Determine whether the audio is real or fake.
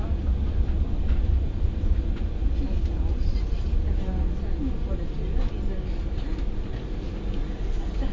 real